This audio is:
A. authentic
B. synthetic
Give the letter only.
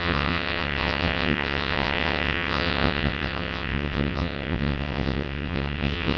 B